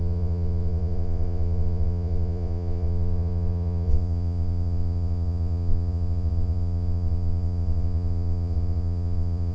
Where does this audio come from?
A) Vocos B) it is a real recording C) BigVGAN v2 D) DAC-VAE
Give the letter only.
A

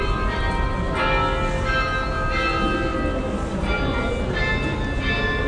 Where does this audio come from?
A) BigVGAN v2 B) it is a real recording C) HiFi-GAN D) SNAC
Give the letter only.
B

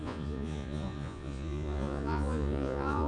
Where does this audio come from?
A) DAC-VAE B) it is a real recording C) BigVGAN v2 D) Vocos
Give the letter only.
D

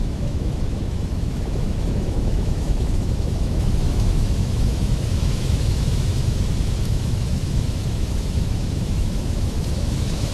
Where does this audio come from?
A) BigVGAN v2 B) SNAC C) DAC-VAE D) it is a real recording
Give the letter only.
C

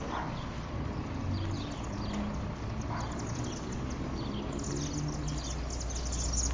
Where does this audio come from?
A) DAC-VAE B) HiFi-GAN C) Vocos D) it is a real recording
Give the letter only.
D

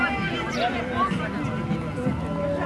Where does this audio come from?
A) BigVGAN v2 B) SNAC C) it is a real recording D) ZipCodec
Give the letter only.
C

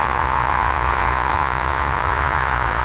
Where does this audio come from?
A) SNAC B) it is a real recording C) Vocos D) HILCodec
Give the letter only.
C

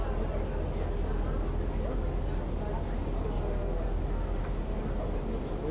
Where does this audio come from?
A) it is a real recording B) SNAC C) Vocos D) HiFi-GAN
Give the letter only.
A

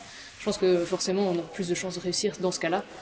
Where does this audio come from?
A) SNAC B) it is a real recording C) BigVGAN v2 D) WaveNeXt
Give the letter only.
B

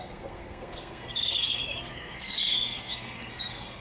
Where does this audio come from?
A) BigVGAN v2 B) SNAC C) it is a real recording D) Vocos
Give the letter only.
B